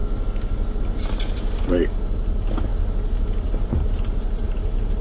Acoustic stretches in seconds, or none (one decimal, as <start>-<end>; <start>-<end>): 0.0-0.8